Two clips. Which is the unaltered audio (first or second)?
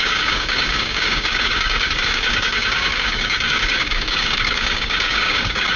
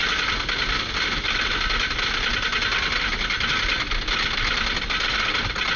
second